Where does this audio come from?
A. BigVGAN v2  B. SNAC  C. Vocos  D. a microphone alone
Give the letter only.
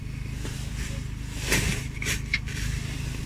D